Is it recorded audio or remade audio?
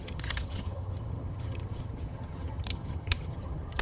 remade